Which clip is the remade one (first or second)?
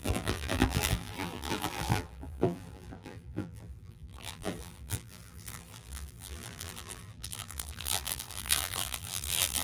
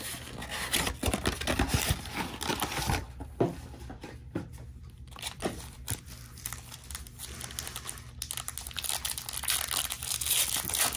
first